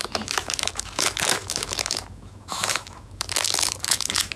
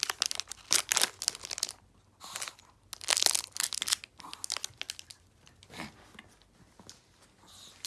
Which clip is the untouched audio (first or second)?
second